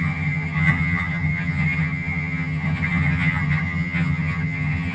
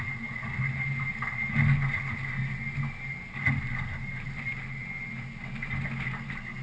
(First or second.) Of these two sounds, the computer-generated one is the first